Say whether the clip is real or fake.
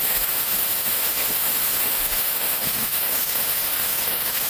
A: fake